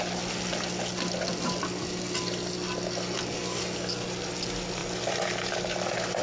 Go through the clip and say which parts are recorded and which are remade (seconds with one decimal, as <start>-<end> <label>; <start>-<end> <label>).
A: 0.0-6.2 recorded